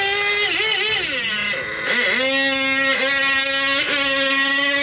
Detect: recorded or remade recorded